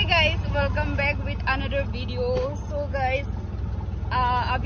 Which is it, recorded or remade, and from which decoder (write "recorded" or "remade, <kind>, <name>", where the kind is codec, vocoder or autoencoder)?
recorded